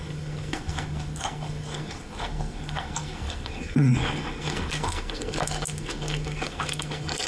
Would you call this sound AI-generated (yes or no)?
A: yes